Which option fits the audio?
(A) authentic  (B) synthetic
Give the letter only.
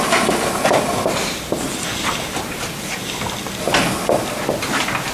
A